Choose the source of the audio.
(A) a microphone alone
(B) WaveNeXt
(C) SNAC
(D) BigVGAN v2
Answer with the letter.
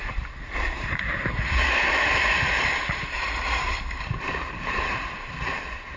D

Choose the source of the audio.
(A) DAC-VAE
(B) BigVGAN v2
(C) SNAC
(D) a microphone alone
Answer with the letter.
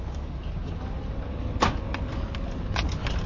D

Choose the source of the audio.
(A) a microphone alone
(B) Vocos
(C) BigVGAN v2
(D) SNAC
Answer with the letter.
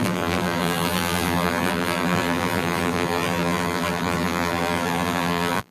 C